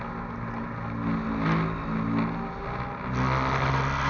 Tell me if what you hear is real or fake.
real